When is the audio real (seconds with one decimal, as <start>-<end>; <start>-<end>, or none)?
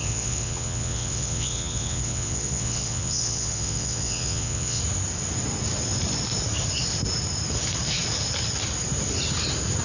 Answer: 4.8-9.8